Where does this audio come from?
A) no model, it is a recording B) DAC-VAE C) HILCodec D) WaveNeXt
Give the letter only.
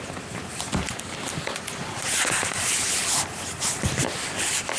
A